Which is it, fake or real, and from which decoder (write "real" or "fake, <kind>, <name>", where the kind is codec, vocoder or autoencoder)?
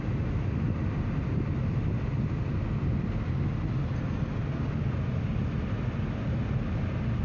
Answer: real